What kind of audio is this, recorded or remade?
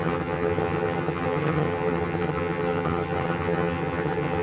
remade